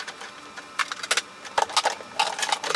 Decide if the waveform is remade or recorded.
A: recorded